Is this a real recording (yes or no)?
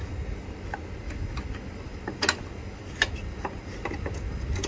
yes